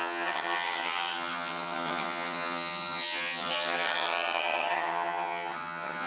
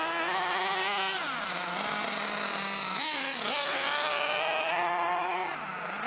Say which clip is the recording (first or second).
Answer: second